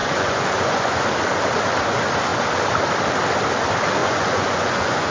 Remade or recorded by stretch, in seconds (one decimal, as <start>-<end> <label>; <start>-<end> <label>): 0.0-1.0 remade; 1.0-4.0 recorded; 4.0-5.1 remade